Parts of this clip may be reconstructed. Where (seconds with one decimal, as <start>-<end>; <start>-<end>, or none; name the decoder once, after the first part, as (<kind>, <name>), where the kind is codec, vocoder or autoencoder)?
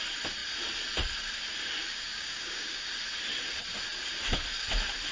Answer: 1.8-2.9 (codec, DAC)